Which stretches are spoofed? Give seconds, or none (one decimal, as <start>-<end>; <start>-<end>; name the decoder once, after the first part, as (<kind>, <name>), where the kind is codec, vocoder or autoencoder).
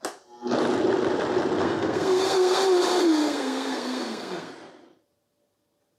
1.6-2.6 (codec, SNAC); 3.0-4.5